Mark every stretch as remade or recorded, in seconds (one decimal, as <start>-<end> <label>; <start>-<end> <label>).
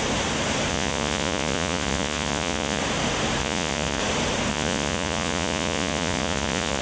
0.0-0.7 recorded; 0.7-2.8 remade; 2.8-3.4 recorded; 3.4-4.0 remade; 4.0-4.5 recorded; 4.5-6.8 remade